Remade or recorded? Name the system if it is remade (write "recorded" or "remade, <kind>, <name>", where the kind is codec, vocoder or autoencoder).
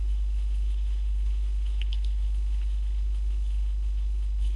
remade, codec, HILCodec